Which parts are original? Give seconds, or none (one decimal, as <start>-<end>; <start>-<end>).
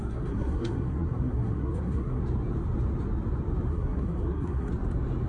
2.2-3.7; 4.7-5.3